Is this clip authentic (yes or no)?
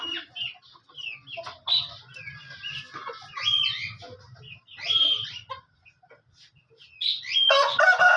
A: yes